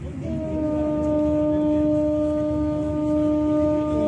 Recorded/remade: recorded